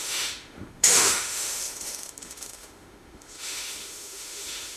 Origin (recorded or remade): remade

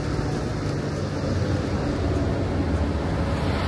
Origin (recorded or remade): recorded